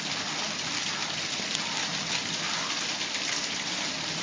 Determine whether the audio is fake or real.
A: real